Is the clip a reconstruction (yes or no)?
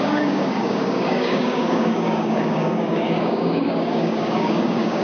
yes